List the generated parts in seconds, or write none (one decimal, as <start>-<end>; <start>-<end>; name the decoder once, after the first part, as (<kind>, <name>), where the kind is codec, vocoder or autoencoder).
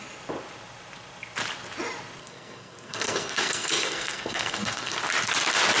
2.2-5.0 (codec, SNAC)